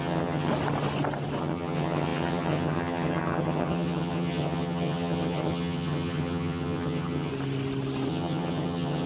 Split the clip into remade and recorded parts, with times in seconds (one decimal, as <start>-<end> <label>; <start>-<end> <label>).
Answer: 0.0-0.5 remade; 0.5-1.4 recorded; 1.4-7.3 remade; 7.3-8.1 recorded; 8.1-9.1 remade